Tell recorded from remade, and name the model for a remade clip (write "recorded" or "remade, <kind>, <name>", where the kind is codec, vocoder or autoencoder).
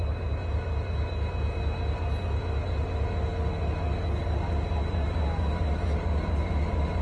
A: recorded